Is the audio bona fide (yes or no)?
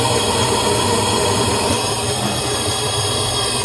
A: yes